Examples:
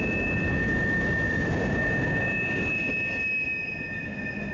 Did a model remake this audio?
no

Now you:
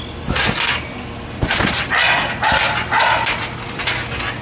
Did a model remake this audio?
no